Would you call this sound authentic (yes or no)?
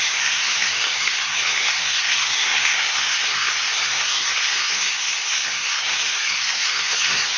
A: no